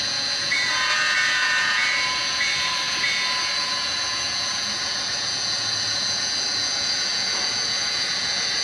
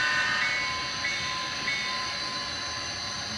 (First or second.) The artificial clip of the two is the first